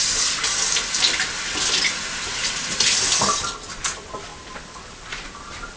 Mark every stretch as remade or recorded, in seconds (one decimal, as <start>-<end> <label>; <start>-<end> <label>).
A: 0.0-5.8 recorded